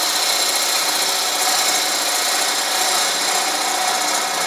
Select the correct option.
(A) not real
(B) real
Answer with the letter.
B